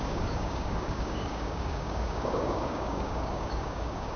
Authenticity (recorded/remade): remade